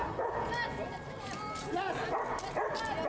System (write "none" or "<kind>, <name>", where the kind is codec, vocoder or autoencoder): none